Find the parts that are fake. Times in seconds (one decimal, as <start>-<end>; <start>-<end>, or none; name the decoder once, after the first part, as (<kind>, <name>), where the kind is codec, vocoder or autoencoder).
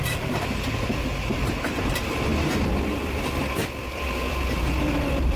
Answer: none